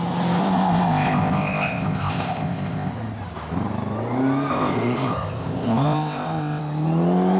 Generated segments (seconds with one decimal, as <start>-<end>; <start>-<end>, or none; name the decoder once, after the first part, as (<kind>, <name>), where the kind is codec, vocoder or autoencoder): 0.4-2.9 (codec, ZipCodec); 4.5-6.6